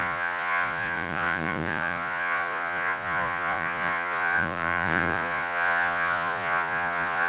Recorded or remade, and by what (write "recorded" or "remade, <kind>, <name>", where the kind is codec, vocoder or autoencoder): remade, vocoder, Vocos